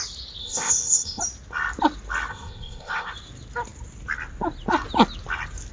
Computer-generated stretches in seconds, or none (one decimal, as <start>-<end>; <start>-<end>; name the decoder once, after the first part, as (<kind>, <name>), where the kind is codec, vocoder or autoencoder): 0.4-1.2 (codec, ZipCodec); 2.3-3.1